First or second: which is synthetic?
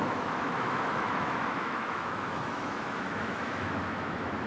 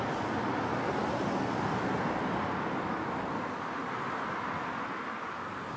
first